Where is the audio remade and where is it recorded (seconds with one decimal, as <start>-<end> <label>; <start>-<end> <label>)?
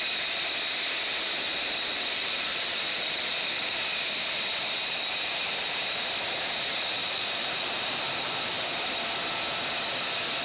0.0-1.9 recorded; 1.9-3.8 remade; 3.8-7.0 recorded; 7.0-8.7 remade; 8.7-10.4 recorded